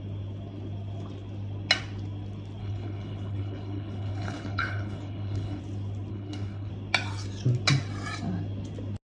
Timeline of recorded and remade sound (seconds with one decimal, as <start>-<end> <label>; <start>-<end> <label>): 0.0-2.6 recorded; 2.6-5.6 remade; 5.6-6.1 recorded; 6.1-6.7 remade; 6.7-9.1 recorded